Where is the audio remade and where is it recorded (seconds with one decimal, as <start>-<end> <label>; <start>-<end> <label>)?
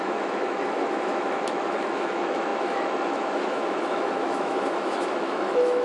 0.0-5.8 remade